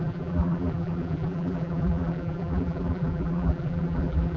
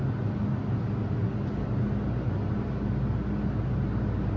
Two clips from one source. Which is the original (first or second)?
second